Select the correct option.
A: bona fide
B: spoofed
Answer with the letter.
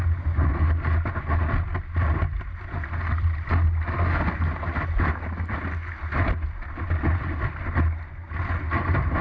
A